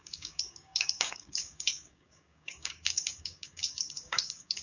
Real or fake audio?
fake